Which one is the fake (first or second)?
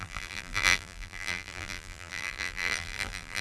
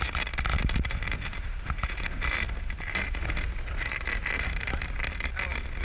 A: first